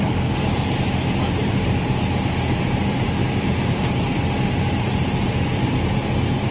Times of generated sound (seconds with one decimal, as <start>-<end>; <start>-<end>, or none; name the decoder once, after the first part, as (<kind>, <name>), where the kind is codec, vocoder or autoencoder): none

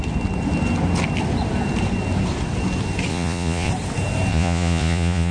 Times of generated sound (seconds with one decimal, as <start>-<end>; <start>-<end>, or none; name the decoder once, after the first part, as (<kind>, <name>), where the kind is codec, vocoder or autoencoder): 3.1-3.7 (vocoder, Vocos); 4.3-5.3

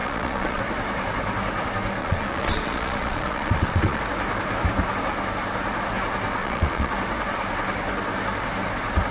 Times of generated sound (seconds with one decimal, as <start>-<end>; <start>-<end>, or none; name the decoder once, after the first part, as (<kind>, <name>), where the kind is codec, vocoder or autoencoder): 0.0-0.6 (vocoder, Vocos); 2.0-4.0; 6.4-6.9

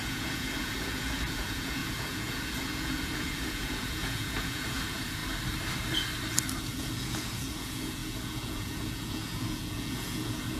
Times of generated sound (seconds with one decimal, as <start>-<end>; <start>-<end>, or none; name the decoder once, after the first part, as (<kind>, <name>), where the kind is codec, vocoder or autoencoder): 0.0-5.2 (vocoder, Vocos); 6.6-10.6